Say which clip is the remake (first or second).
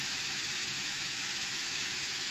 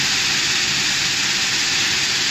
first